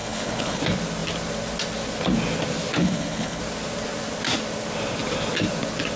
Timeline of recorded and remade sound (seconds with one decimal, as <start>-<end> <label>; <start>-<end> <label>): 0.0-0.6 remade; 0.6-2.8 recorded; 2.8-3.4 remade; 3.4-6.0 recorded